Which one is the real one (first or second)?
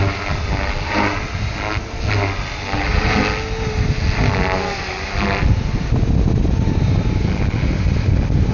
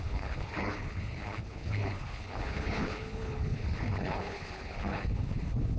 first